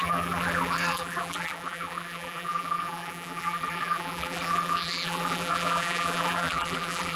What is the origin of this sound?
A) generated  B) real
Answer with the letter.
A